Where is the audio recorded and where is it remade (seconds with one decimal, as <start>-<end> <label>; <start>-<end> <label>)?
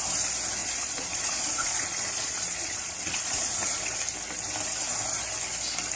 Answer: 0.0-0.6 recorded; 0.6-3.8 remade; 3.8-6.0 recorded